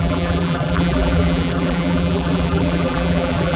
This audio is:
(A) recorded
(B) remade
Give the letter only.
B